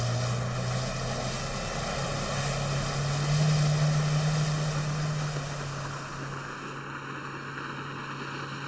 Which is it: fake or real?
real